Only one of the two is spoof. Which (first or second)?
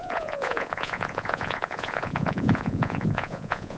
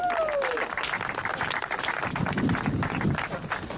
first